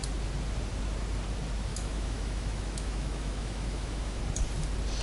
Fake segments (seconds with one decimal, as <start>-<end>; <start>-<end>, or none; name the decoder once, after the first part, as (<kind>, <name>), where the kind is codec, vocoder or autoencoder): 1.7-4.2 (autoencoder, DAC-VAE)